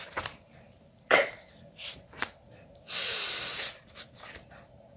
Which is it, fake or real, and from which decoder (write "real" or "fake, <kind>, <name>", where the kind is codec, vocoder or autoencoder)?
fake, vocoder, BigVGAN v2